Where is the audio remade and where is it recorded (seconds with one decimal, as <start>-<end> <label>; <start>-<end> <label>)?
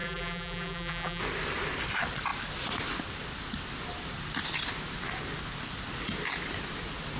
0.0-1.2 remade; 1.2-7.2 recorded